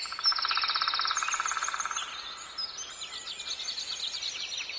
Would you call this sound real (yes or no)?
yes